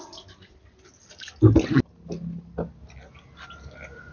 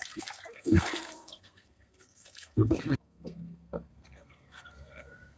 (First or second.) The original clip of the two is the first